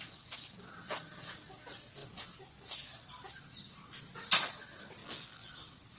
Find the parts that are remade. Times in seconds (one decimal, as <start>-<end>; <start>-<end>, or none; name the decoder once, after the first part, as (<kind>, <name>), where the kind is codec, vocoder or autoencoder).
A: 5.0-5.5 (vocoder, BigVGAN v2)